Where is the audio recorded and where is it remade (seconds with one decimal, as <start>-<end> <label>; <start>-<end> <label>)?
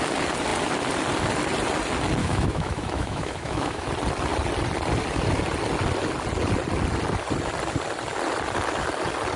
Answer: 0.0-2.2 recorded; 2.2-3.9 remade; 3.9-9.4 recorded